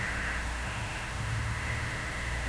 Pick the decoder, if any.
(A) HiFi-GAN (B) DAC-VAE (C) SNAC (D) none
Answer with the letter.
B